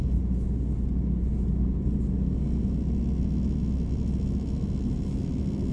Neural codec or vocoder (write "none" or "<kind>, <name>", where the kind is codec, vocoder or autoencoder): none